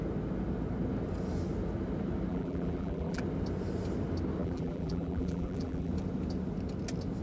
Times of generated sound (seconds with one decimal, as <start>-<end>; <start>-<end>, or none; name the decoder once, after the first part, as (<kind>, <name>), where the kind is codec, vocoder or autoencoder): 2.3-3.2 (vocoder, BigVGAN v2); 4.4-5.9